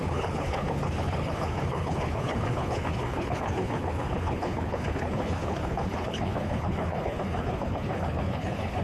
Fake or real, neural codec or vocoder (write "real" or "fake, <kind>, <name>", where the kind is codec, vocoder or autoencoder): fake, codec, HILCodec